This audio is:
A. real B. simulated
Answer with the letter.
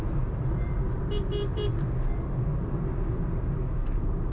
B